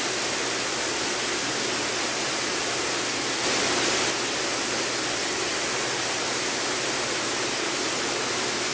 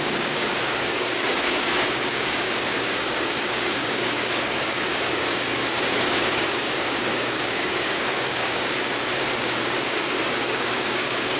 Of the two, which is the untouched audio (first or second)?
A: first